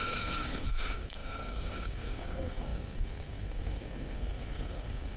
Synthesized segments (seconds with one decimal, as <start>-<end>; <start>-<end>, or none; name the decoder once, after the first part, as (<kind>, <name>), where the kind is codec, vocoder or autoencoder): 0.0-5.2 (codec, SNAC)